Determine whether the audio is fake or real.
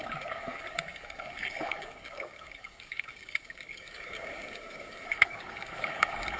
fake